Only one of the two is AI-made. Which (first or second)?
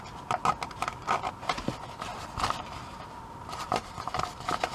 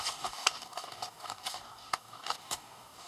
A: second